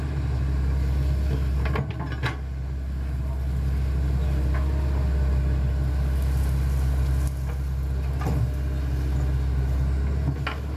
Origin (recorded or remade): recorded